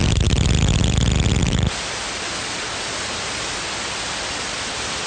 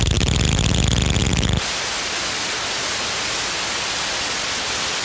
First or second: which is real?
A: second